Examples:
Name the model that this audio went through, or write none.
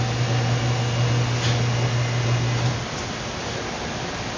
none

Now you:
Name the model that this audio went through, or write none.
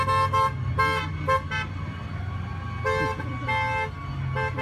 none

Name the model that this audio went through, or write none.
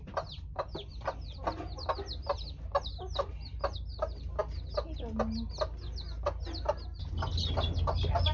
none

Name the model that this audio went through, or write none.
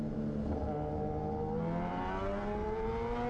none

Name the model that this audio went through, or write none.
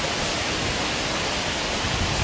none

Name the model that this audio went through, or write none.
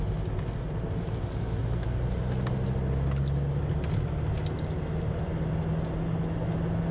none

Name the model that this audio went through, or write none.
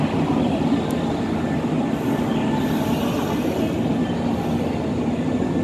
none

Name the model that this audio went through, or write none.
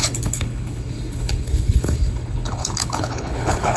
codec, HILCodec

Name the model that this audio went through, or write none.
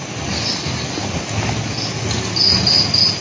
none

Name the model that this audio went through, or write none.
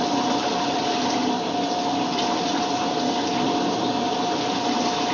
none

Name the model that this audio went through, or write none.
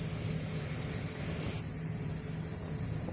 none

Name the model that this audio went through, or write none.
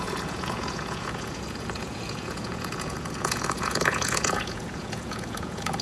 vocoder, Vocos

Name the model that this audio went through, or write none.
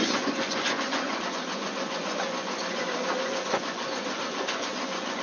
vocoder, Vocos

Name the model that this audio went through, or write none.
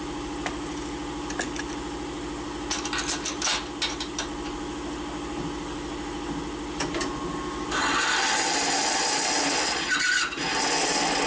none